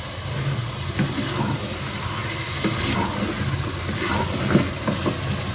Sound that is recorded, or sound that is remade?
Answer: recorded